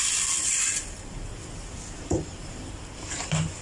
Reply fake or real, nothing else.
fake